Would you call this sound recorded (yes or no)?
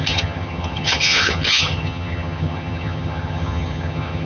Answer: no